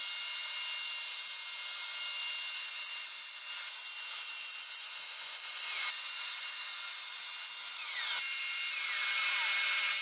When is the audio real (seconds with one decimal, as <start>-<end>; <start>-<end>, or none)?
0.0-4.8; 6.6-10.0